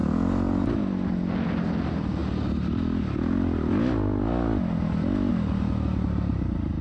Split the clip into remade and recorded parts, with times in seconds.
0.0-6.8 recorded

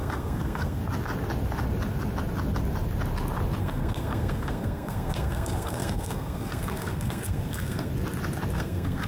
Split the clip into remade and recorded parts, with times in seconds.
0.0-0.8 remade; 0.8-3.6 recorded; 3.6-7.9 remade; 7.9-8.5 recorded; 8.5-9.1 remade

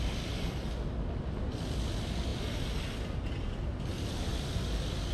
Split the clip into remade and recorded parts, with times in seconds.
0.0-5.1 recorded

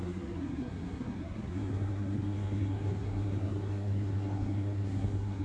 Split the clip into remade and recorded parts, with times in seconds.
0.0-5.4 remade

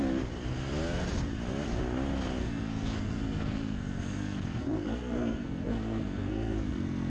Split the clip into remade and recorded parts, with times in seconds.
0.0-2.4 recorded; 2.4-7.1 remade

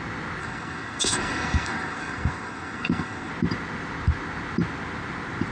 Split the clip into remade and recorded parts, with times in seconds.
0.0-0.4 recorded; 0.4-3.3 remade; 3.3-5.5 recorded

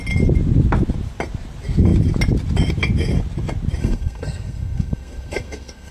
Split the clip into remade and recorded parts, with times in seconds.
0.0-3.8 recorded; 3.8-5.9 remade